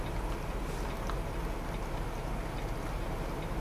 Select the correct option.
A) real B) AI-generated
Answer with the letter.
A